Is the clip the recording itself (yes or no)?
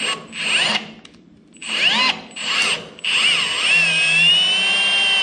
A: yes